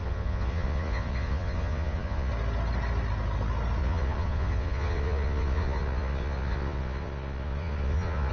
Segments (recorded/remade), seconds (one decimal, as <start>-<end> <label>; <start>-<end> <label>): 0.0-2.3 remade; 2.3-3.8 recorded; 3.8-8.3 remade